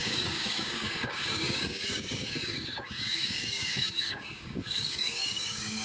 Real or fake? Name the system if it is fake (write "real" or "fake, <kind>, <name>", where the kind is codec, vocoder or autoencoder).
fake, codec, DAC